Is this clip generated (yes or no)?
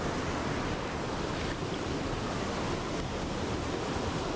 no